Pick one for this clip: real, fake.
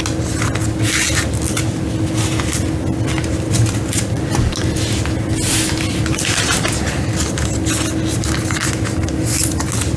real